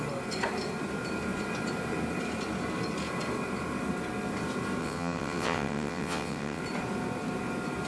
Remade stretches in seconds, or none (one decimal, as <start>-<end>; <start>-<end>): 4.8-6.6